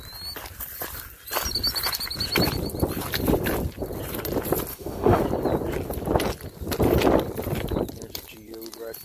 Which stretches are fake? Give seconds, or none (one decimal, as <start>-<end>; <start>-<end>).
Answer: 4.7-5.2